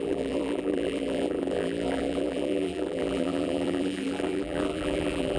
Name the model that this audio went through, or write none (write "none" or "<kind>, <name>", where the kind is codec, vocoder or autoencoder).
vocoder, BigVGAN v2